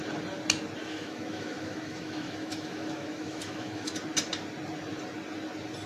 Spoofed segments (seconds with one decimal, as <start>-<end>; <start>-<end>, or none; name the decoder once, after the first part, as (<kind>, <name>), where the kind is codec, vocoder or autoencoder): 0.8-3.9 (autoencoder, DAC-VAE)